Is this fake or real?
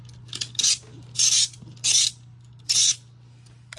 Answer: real